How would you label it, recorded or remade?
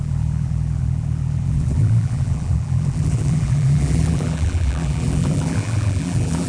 remade